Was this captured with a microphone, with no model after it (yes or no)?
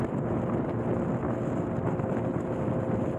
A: yes